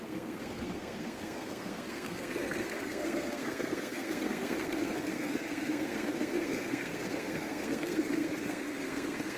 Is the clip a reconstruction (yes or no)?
yes